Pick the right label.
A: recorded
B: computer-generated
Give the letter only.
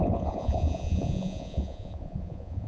B